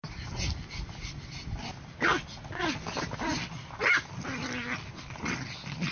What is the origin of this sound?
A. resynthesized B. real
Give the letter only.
B